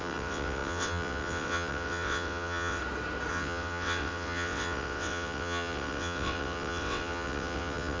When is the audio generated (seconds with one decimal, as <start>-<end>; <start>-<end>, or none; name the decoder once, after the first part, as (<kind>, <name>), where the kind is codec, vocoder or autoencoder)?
0.0-2.8 (vocoder, WaveNeXt); 3.3-8.0